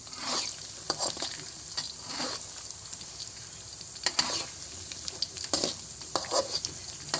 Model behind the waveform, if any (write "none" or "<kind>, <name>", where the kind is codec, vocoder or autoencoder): none